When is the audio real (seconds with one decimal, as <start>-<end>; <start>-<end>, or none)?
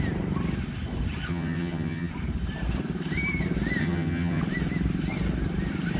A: 0.0-1.3; 2.1-3.8; 4.4-6.0